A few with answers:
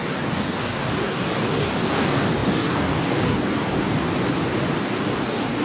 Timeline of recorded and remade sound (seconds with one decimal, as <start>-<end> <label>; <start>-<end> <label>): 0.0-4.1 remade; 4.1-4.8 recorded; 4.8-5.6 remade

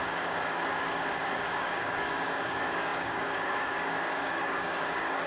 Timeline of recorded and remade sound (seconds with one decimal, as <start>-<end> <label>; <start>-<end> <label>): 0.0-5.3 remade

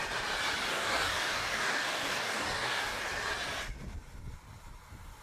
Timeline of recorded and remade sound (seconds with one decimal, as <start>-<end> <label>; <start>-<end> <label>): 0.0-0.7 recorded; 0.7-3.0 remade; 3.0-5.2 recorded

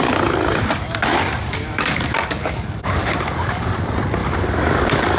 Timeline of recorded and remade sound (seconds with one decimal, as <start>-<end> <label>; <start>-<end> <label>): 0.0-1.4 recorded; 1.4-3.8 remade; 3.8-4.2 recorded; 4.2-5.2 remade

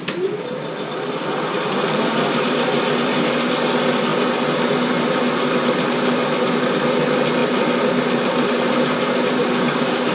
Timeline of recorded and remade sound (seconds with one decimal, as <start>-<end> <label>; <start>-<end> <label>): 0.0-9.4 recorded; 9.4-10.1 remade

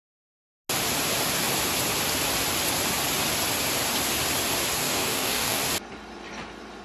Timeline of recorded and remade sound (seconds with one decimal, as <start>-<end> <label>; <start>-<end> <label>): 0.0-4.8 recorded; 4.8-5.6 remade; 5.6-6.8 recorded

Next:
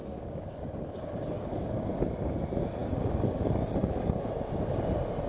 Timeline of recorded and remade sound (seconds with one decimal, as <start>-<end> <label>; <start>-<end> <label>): 0.0-2.0 remade; 2.0-2.8 recorded; 2.8-4.3 remade; 4.3-5.3 recorded

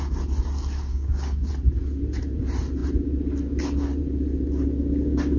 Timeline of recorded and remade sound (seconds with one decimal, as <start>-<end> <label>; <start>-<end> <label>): 0.0-0.9 recorded; 0.9-1.5 remade; 1.5-5.4 recorded